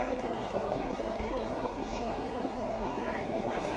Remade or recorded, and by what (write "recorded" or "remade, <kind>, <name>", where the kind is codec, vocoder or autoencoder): remade, codec, SNAC